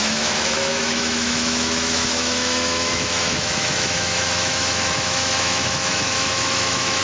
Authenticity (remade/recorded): remade